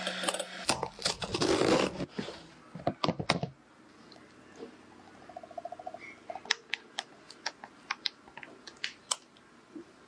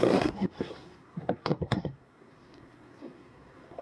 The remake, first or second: second